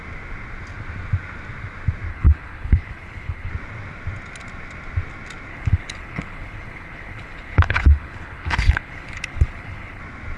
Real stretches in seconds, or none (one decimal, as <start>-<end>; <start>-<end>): 0.0-2.1; 3.5-5.5; 10.0-10.4